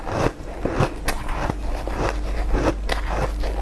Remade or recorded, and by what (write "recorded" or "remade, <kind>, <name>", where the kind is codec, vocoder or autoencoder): recorded